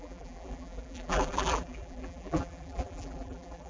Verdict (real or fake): fake